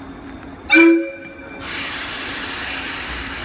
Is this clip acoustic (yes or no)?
yes